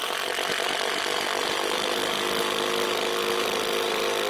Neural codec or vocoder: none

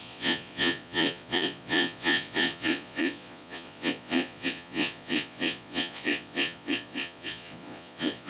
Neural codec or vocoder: vocoder, Vocos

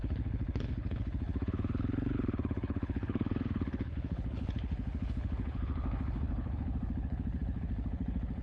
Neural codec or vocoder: codec, HILCodec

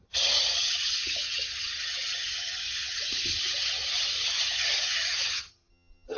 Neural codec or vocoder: vocoder, HiFi-GAN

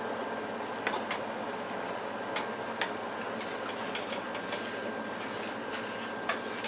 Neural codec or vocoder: none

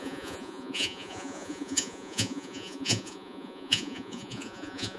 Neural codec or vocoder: vocoder, Vocos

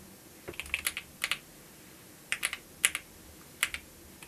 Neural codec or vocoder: none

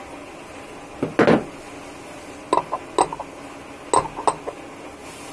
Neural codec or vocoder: none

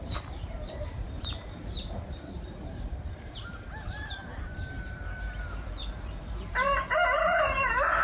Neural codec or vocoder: vocoder, BigVGAN v2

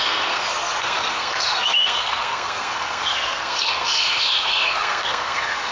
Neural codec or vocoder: codec, SNAC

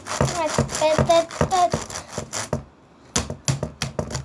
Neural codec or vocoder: none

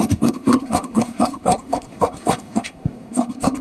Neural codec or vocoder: codec, SNAC